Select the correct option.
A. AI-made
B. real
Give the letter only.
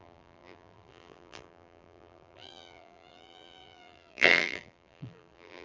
A